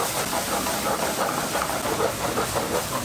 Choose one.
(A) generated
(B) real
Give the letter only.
B